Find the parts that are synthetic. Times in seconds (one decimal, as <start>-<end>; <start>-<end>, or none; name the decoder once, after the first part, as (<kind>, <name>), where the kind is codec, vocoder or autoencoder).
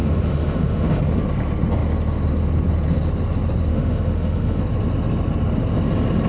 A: 0.0-1.0 (autoencoder, DAC-VAE); 3.7-4.6